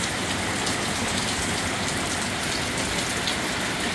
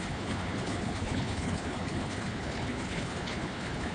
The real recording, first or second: first